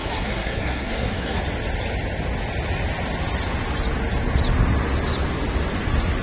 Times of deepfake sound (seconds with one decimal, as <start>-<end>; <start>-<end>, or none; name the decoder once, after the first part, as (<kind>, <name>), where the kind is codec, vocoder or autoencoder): 0.0-1.4 (codec, SNAC)